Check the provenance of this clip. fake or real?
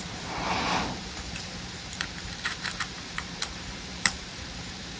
fake